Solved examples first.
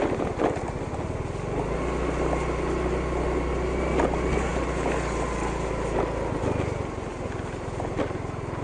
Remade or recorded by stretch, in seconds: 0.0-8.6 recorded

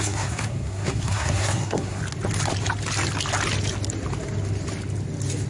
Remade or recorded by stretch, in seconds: 0.0-2.0 remade; 2.0-5.5 recorded

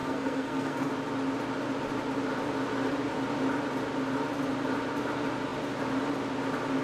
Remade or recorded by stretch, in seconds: 0.0-0.9 remade; 0.9-6.8 recorded

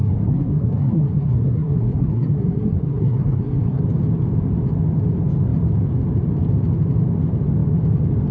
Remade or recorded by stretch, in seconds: 0.0-3.8 remade; 3.8-8.3 recorded

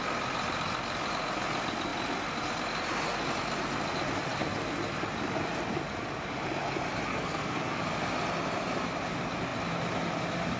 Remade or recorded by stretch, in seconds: 0.0-7.1 recorded; 7.1-7.8 remade; 7.8-10.6 recorded

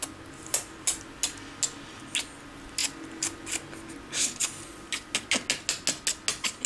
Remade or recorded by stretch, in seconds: 0.0-6.7 recorded

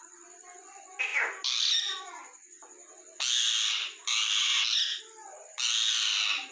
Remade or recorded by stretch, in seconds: 0.0-6.5 recorded